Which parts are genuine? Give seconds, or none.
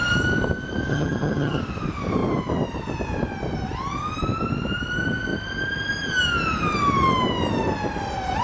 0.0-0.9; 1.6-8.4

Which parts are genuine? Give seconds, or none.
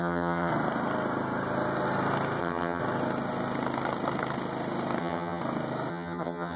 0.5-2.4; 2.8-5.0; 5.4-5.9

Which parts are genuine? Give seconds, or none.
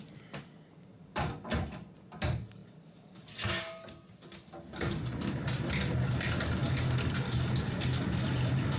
0.0-8.8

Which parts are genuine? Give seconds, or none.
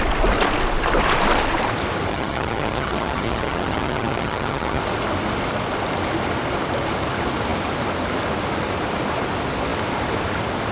0.0-2.1; 4.8-10.7